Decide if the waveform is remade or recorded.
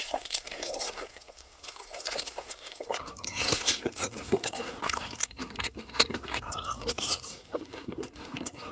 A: remade